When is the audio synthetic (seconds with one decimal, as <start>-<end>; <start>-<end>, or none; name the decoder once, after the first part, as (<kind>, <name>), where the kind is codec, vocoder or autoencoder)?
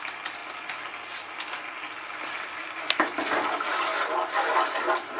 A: none